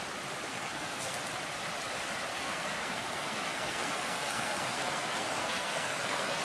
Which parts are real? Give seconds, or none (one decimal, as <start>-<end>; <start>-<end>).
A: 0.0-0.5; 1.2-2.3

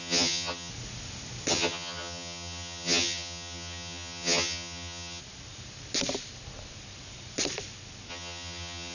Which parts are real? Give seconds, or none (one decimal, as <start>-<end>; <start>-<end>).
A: 0.7-1.5; 5.2-8.1

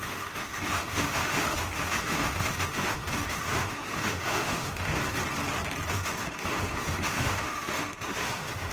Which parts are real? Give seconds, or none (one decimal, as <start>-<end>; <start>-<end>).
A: 5.0-5.9